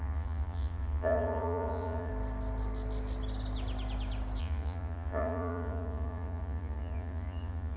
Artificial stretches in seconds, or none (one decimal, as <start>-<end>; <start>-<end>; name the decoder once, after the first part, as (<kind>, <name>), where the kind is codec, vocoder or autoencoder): 0.0-2.1 (vocoder, Vocos); 4.4-7.8